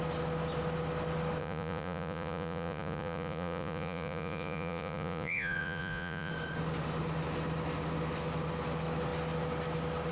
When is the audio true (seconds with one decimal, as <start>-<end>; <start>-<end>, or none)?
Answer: 0.0-1.4; 6.3-10.1